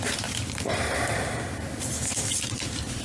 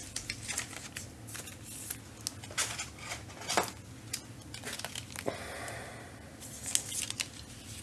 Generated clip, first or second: first